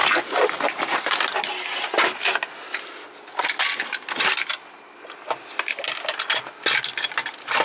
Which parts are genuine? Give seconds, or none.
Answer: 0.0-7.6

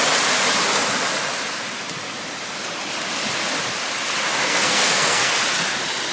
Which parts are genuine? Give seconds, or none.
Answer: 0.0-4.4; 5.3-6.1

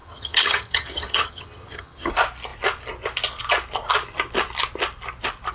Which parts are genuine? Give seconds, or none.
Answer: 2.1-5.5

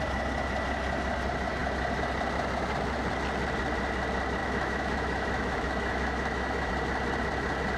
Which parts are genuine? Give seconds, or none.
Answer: 0.0-4.4; 6.7-7.8

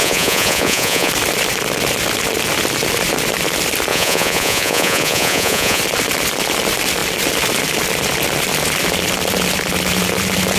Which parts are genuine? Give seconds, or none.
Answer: 1.1-3.9; 5.8-10.6

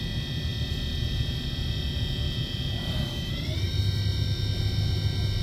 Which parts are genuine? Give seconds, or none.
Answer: 0.0-5.4

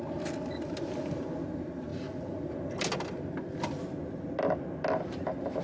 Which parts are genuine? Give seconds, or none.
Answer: 0.0-5.6